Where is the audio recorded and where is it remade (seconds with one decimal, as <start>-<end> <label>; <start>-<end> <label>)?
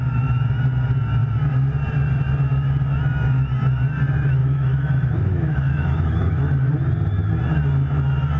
0.0-4.4 recorded; 4.4-6.4 remade; 6.4-8.4 recorded